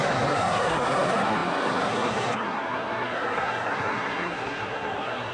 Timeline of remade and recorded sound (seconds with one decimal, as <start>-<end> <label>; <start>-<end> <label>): 0.0-5.3 remade

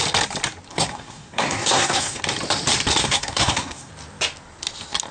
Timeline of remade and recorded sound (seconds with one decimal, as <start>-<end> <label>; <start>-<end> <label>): 0.0-0.7 recorded; 0.7-2.2 remade; 2.2-3.0 recorded; 3.0-3.9 remade; 3.9-5.1 recorded

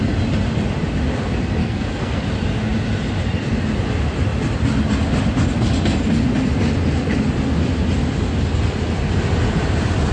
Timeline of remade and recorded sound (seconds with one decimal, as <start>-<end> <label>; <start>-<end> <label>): 0.0-1.6 recorded; 1.6-2.2 remade; 2.2-10.1 recorded

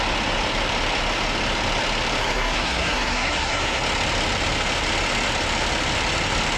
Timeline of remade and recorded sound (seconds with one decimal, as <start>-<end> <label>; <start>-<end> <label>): 0.0-2.2 recorded; 2.2-3.8 remade; 3.8-6.6 recorded

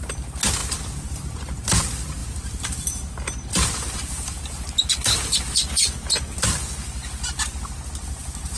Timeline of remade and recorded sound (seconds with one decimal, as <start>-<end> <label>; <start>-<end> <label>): 0.0-8.6 recorded